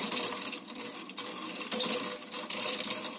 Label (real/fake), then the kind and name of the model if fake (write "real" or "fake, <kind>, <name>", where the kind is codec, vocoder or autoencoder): real